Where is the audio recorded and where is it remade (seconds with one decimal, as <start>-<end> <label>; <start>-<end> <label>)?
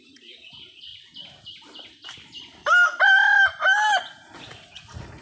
0.0-0.9 remade; 0.9-4.0 recorded; 4.0-5.2 remade